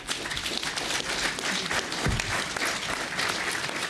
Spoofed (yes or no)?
no